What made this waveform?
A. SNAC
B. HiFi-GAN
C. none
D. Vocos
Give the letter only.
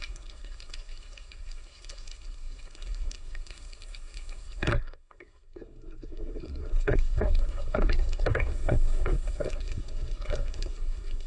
A